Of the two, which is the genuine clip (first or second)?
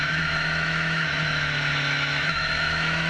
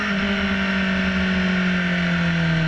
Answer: second